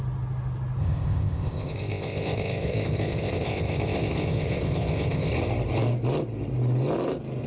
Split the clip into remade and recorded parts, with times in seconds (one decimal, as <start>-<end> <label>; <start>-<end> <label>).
0.0-0.8 recorded; 0.8-5.3 remade; 5.3-7.5 recorded